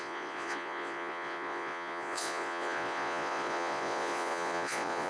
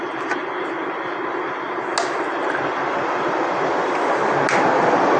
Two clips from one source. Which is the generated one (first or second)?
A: first